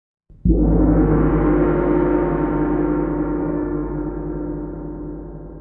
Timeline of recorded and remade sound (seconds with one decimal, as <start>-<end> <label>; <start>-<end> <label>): 0.0-1.3 remade; 1.3-3.4 recorded; 3.4-4.0 remade; 4.0-5.6 recorded